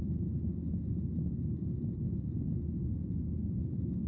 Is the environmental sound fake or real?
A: real